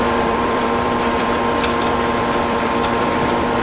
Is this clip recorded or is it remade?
remade